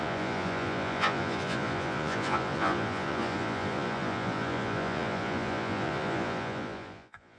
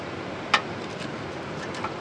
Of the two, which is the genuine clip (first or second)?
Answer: second